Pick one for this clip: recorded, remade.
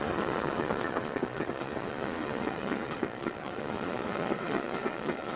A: remade